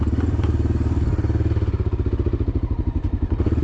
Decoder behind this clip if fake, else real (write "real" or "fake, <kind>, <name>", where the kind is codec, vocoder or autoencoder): real